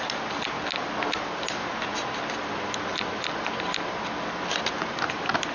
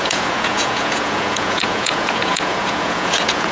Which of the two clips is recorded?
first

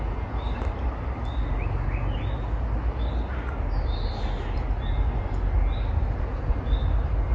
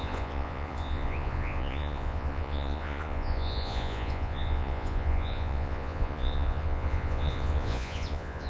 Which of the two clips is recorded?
first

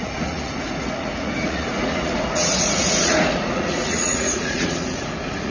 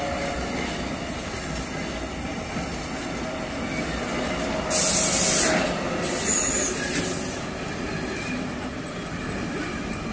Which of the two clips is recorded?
second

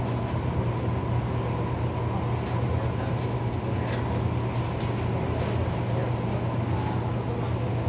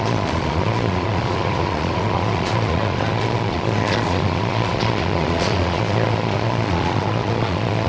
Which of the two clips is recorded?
first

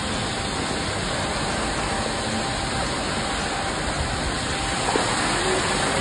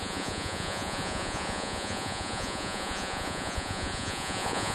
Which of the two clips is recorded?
first